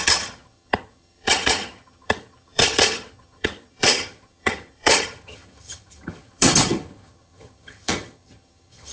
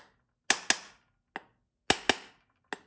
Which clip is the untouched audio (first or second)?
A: second